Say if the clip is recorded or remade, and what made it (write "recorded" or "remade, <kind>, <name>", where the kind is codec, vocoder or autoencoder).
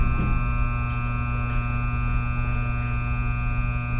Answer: recorded